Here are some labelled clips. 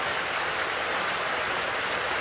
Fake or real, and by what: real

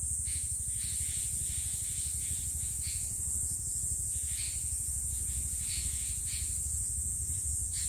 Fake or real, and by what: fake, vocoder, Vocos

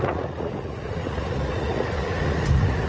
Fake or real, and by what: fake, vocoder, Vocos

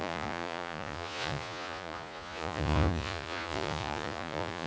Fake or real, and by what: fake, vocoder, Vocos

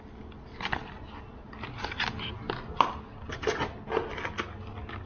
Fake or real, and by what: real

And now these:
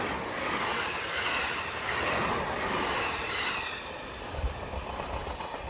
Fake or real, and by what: real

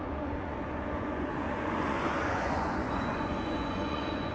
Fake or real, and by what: fake, vocoder, Vocos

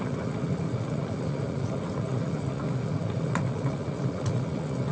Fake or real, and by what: fake, vocoder, Vocos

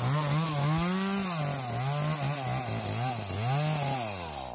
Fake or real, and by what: real